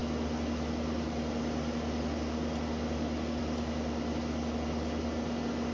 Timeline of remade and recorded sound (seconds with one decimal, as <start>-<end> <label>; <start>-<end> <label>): 0.0-5.7 recorded